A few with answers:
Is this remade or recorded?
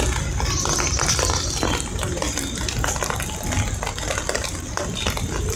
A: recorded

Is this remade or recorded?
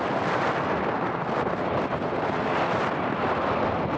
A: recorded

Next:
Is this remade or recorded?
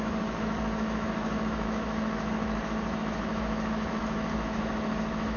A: remade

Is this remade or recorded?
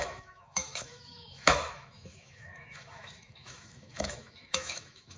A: remade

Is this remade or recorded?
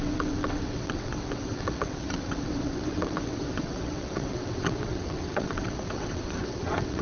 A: remade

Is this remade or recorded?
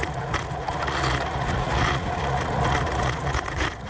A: remade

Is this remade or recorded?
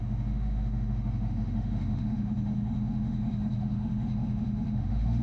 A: remade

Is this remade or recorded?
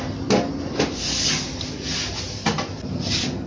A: recorded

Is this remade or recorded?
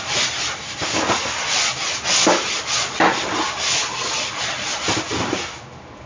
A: remade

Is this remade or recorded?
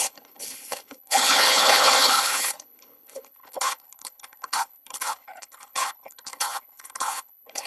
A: remade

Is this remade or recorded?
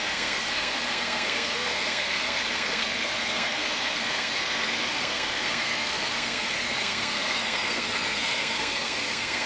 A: remade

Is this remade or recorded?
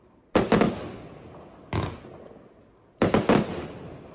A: recorded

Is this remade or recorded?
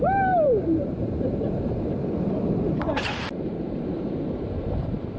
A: remade